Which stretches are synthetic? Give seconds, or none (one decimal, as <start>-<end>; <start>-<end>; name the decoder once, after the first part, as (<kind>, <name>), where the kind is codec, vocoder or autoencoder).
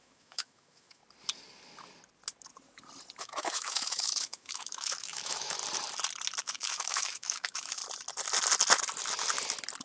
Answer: 0.0-1.0 (autoencoder, DAC-VAE); 3.2-5.6; 6.4-7.8